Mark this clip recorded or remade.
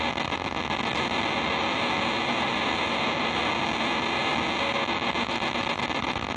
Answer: recorded